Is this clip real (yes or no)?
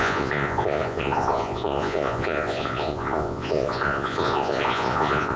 no